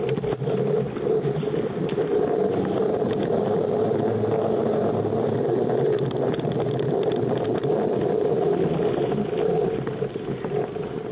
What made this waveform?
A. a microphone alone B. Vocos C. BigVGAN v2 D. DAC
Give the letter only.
A